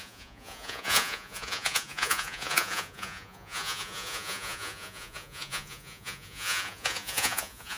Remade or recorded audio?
remade